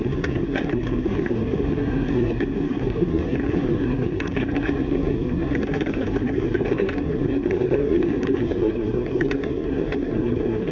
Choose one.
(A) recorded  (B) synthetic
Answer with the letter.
B